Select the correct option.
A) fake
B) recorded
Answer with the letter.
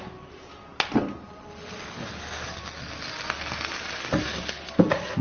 B